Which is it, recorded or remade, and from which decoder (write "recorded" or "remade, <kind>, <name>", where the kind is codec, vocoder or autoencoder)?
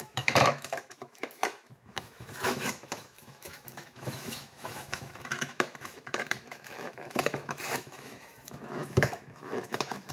remade, autoencoder, DAC-VAE